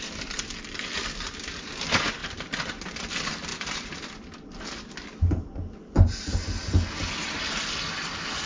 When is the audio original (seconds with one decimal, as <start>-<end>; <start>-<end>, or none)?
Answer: 0.0-8.5